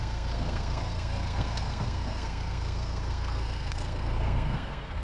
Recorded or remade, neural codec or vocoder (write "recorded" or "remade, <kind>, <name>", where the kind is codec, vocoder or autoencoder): remade, codec, SNAC